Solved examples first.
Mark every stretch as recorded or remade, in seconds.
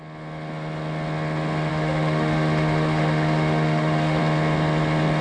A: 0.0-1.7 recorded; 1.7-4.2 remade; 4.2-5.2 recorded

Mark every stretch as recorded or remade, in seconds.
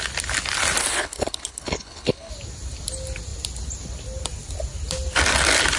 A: 0.0-0.8 recorded; 0.8-2.3 remade; 2.3-5.8 recorded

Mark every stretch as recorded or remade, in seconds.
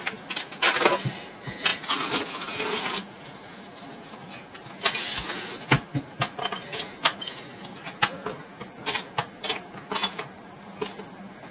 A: 0.0-11.5 recorded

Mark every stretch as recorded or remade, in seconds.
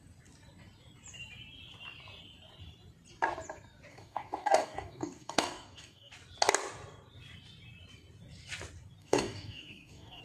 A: 0.0-3.9 recorded; 3.9-6.1 remade; 6.1-9.0 recorded; 9.0-10.2 remade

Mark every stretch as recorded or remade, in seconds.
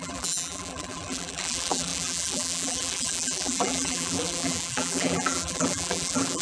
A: 0.0-6.4 remade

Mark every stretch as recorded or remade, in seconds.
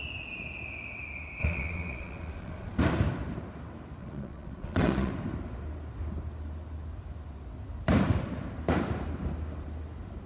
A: 0.0-1.4 recorded; 1.4-2.8 remade; 2.8-4.0 recorded; 4.0-5.1 remade; 5.1-10.3 recorded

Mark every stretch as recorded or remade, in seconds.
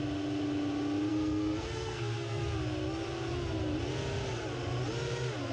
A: 0.0-1.1 recorded; 1.1-2.4 remade; 2.4-5.5 recorded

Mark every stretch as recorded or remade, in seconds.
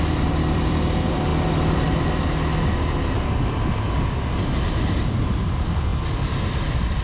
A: 0.0-1.3 remade; 1.3-5.5 recorded; 5.5-5.9 remade; 5.9-6.5 recorded; 6.5-7.0 remade